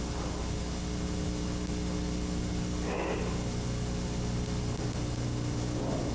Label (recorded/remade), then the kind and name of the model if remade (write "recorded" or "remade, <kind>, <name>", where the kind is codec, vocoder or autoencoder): recorded